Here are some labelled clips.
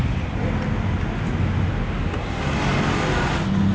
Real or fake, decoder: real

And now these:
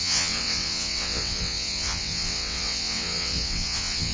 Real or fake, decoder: fake, vocoder, WaveNeXt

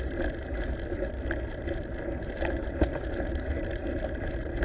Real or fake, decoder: real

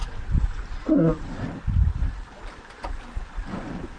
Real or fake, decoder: real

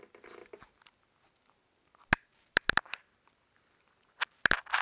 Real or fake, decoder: real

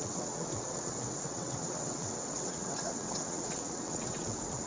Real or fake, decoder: fake, vocoder, WaveNeXt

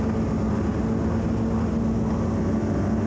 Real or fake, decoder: real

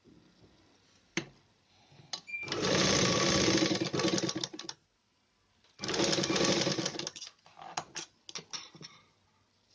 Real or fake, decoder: real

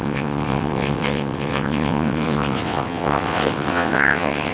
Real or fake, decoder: fake, vocoder, WaveNeXt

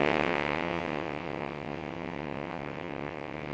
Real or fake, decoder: fake, vocoder, WaveNeXt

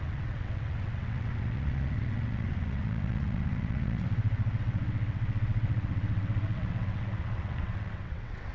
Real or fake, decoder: fake, vocoder, WaveNeXt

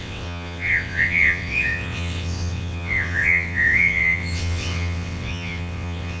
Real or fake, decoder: fake, vocoder, WaveNeXt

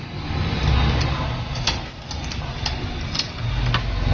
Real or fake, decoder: real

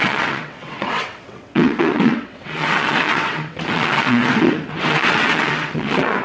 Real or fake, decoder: fake, vocoder, WaveNeXt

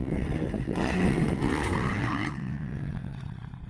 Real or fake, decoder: fake, vocoder, WaveNeXt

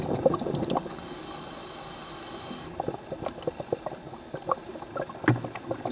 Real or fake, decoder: real